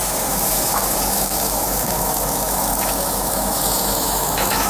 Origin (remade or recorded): remade